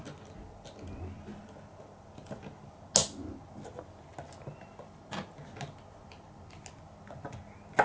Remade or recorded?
recorded